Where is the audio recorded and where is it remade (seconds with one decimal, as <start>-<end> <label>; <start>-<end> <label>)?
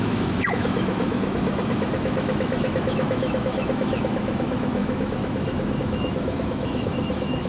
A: 0.0-7.5 remade